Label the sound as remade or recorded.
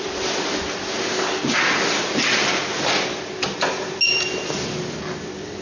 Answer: recorded